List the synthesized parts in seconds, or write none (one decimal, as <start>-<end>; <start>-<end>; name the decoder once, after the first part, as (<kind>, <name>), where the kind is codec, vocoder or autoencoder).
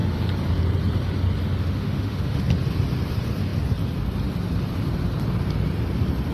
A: 1.6-2.4 (autoencoder, DAC-VAE)